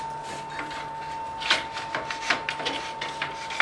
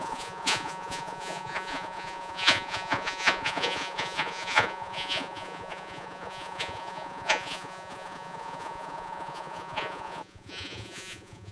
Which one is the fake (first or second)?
second